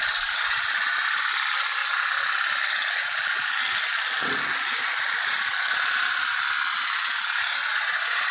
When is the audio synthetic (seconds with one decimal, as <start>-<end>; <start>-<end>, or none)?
7.6-8.3